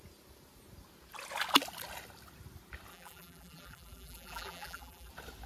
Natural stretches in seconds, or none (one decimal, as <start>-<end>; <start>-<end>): 0.0-2.9; 5.1-5.5